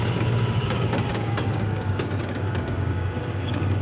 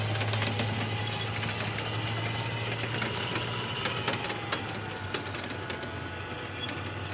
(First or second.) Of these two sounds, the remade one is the first